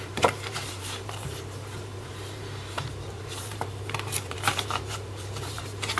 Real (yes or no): no